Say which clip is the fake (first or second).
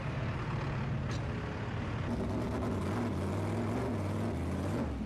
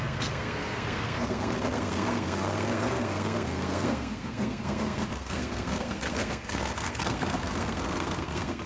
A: second